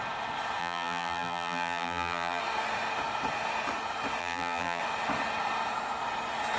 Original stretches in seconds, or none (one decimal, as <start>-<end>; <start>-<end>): 0.0-0.6; 2.4-4.2; 4.8-6.6